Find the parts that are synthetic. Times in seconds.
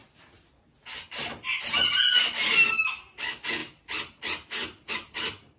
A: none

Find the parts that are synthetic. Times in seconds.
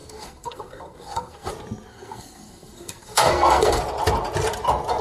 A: 0.0-1.5 (codec, SNAC); 1.9-3.8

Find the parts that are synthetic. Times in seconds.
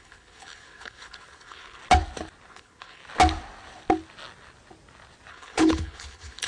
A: 0.0-1.8 (codec, HILCodec); 2.5-3.0; 5.3-6.5